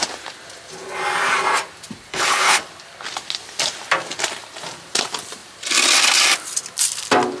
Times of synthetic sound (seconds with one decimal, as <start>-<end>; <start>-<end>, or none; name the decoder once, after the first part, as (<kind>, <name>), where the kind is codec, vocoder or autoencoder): 2.1-2.6 (codec, HILCodec)